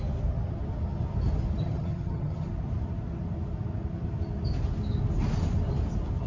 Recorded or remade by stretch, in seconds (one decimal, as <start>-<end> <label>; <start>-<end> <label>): 0.0-1.6 recorded; 1.6-2.5 remade; 2.5-6.3 recorded